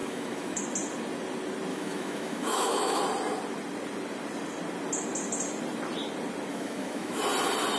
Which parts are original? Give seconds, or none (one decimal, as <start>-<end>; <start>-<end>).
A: 0.6-1.7; 3.0-6.5; 7.2-7.8